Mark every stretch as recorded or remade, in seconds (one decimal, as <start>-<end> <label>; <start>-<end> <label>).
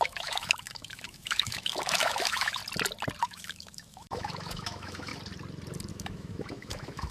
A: 0.0-2.6 remade; 2.6-3.2 recorded; 3.2-5.1 remade; 5.1-5.9 recorded; 5.9-7.1 remade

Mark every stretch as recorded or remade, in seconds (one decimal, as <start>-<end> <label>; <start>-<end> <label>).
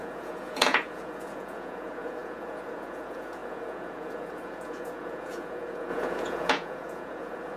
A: 0.0-7.6 remade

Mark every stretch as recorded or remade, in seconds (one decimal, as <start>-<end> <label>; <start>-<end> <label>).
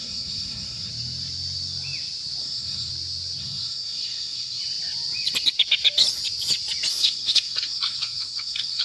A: 0.0-0.9 remade; 0.9-2.4 recorded; 2.4-2.9 remade; 2.9-3.4 recorded; 3.4-4.6 remade; 4.6-6.9 recorded; 6.9-8.8 remade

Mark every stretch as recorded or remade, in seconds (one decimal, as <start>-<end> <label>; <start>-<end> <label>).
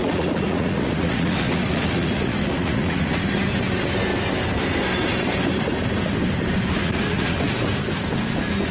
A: 0.0-3.2 remade; 3.2-6.8 recorded; 6.8-7.5 remade; 7.5-8.7 recorded